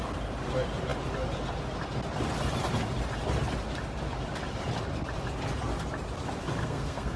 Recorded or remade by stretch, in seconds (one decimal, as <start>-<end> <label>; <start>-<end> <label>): 0.0-6.6 recorded; 6.6-7.2 remade